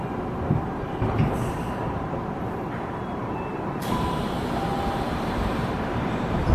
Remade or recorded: remade